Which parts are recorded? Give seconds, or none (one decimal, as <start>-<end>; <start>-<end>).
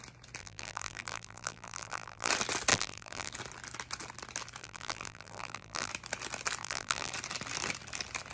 0.0-0.4; 2.3-2.7; 3.3-4.6; 5.9-6.6; 7.1-8.3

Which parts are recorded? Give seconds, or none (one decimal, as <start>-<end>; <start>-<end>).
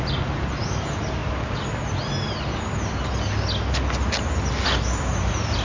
0.0-5.6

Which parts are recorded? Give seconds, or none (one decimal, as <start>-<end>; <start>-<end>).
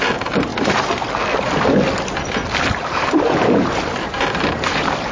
0.5-2.6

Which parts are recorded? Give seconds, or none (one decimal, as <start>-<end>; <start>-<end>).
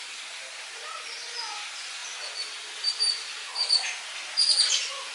0.0-5.1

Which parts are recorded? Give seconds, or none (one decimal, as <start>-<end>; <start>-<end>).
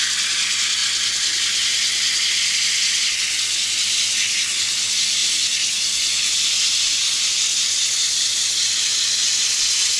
0.0-8.9; 9.4-10.0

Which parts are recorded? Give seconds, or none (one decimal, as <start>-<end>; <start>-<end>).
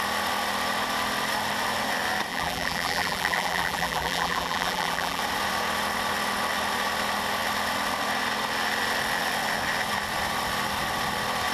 0.0-2.3; 5.2-11.5